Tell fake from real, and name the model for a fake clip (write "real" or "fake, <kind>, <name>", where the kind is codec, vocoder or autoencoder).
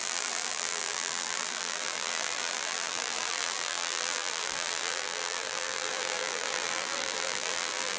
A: fake, vocoder, BigVGAN v2